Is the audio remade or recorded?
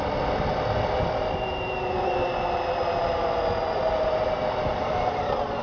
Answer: recorded